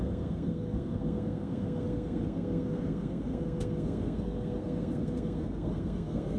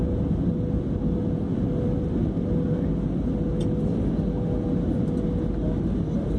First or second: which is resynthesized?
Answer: first